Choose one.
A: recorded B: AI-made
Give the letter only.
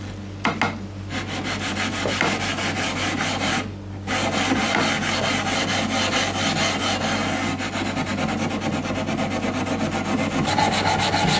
A